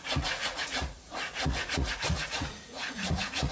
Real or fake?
fake